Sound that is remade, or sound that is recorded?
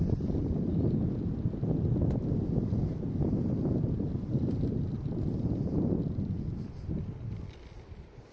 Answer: recorded